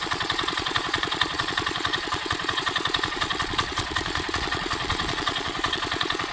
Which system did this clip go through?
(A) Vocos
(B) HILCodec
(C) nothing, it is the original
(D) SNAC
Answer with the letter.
A